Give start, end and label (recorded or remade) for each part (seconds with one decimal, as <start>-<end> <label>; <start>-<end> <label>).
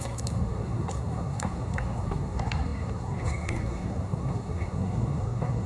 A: 0.0-5.7 remade